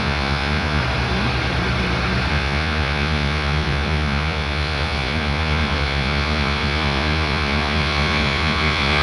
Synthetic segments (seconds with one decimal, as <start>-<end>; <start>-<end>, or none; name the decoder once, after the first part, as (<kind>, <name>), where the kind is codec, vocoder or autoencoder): 0.0-0.8 (vocoder, Vocos); 2.3-9.0